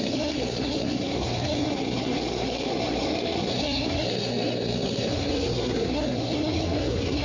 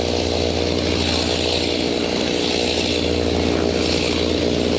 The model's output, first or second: first